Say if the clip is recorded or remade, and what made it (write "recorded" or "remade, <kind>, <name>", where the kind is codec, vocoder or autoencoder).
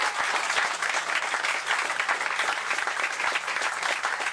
recorded